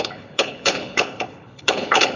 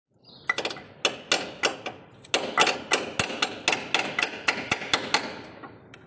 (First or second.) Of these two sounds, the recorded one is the second